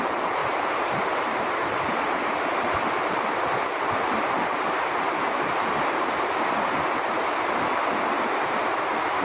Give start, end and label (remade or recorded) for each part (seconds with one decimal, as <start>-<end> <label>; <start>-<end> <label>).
0.0-9.2 remade